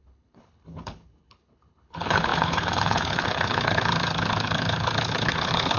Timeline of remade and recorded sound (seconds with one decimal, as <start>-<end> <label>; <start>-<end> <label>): 0.0-5.8 remade